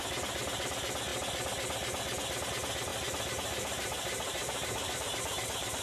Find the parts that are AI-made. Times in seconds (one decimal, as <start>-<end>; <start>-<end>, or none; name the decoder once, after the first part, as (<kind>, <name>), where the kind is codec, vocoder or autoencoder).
2.9-5.8 (vocoder, BigVGAN v2)